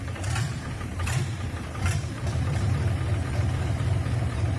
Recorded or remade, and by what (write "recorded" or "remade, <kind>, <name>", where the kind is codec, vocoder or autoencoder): remade, vocoder, BigVGAN v2